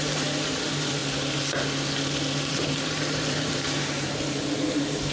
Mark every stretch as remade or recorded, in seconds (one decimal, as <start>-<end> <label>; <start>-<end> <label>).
0.0-1.0 remade; 1.0-2.5 recorded; 2.5-5.1 remade